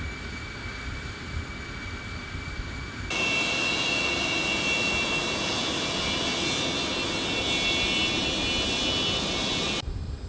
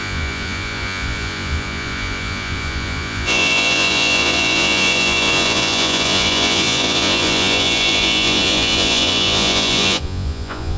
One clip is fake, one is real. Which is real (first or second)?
first